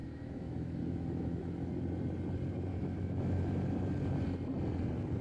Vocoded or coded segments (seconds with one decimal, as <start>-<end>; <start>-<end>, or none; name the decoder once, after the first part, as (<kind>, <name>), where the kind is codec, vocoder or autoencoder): 0.0-1.5 (autoencoder, DAC-VAE); 2.7-3.4